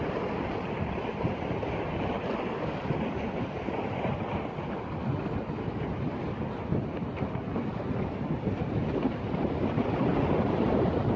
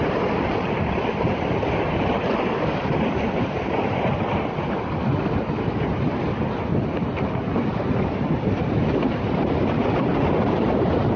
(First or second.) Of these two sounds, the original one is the first